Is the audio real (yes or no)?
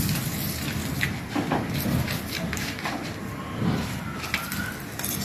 yes